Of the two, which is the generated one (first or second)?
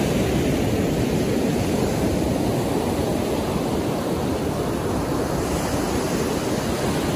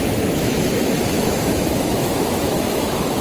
second